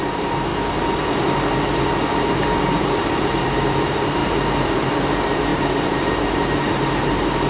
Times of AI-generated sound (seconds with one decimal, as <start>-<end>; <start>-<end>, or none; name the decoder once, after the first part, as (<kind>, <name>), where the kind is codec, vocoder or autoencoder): 0.0-0.5 (vocoder, BigVGAN v2); 2.3-7.5